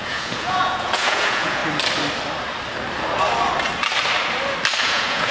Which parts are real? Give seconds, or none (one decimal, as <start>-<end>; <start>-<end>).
1.6-4.8